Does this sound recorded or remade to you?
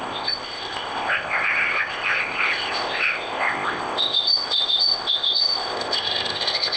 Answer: remade